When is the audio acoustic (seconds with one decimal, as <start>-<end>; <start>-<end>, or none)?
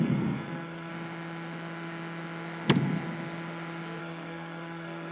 0.9-4.0